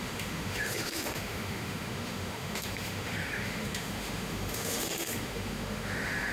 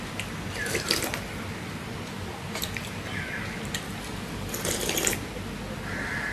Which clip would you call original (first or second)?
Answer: second